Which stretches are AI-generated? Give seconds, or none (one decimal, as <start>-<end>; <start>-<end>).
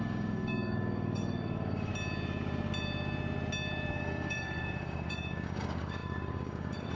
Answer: 0.0-1.9; 3.9-6.9